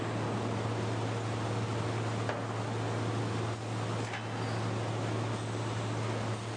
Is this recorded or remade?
recorded